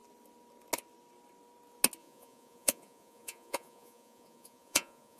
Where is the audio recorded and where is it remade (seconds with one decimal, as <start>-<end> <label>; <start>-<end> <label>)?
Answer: 0.0-2.0 recorded; 2.0-5.2 remade